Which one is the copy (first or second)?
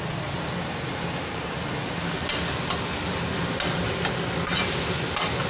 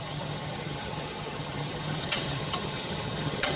second